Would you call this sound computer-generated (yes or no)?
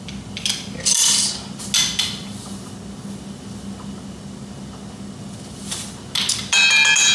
no